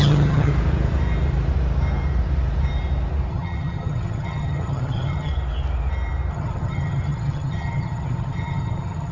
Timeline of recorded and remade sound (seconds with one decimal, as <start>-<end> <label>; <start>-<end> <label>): 0.0-0.5 remade; 0.5-3.3 recorded; 3.3-5.3 remade; 5.3-6.3 recorded; 6.3-9.1 remade